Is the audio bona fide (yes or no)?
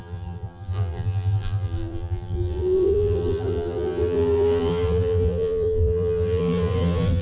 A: no